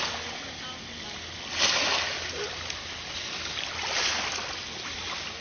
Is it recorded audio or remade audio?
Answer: recorded